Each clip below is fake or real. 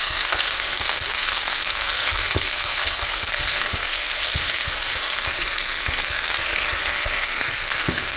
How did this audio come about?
fake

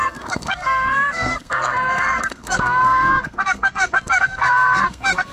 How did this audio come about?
fake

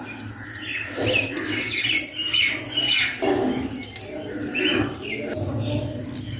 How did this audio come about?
real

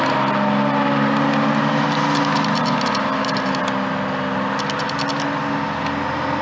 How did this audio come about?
real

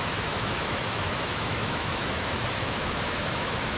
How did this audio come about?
fake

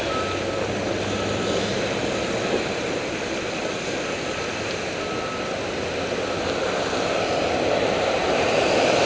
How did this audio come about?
real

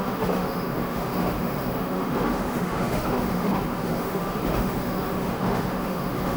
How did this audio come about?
fake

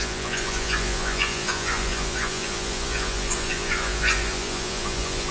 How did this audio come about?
fake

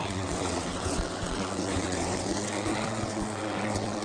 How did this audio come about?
fake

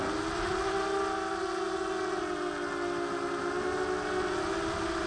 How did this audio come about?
real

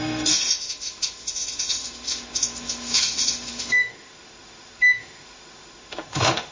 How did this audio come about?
fake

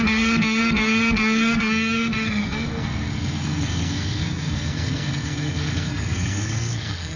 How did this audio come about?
fake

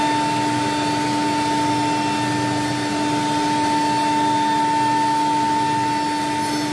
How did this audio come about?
real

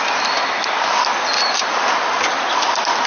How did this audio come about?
real